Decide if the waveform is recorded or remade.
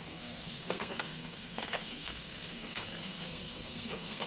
remade